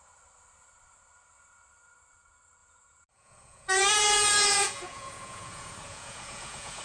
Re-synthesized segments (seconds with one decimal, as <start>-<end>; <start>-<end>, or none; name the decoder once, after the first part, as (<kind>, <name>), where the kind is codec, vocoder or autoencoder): 2.6-6.8 (vocoder, Vocos)